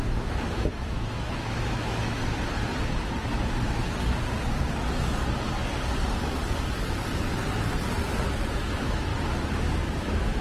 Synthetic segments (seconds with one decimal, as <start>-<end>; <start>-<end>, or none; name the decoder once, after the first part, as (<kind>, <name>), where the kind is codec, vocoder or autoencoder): 0.0-2.2 (autoencoder, DAC-VAE); 3.2-3.8; 8.6-9.1; 9.8-10.4

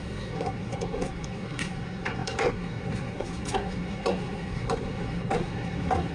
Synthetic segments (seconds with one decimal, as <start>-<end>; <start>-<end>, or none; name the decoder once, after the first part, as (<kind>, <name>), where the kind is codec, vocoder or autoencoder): 0.0-6.1 (codec, SNAC)